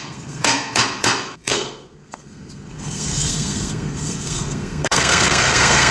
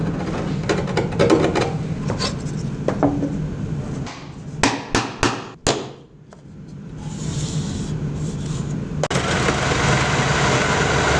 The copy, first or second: first